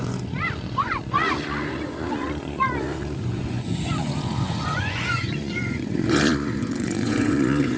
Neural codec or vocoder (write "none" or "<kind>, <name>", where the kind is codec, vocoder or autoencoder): vocoder, Vocos